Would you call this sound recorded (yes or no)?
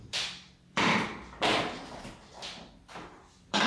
no